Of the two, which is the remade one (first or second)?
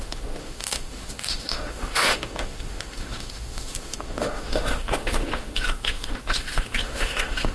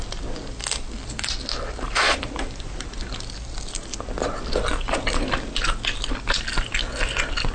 first